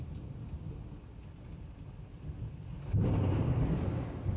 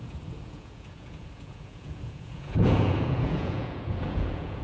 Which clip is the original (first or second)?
first